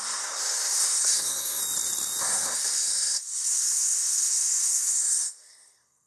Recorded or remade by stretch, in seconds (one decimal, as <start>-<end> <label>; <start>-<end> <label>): 0.0-1.6 remade; 1.6-2.2 recorded; 2.2-6.1 remade